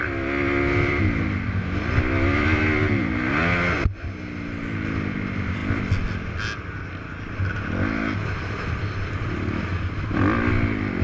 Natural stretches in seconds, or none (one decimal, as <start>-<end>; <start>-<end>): 0.0-11.0